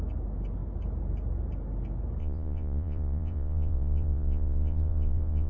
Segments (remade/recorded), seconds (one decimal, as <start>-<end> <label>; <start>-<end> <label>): 0.0-2.2 recorded; 2.2-5.5 remade